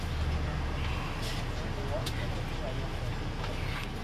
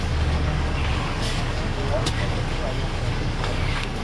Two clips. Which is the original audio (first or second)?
first